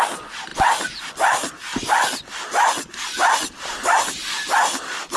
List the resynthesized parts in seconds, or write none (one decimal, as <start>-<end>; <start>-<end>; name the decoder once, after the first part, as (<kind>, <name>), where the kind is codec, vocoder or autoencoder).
none